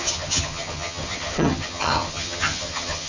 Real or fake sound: fake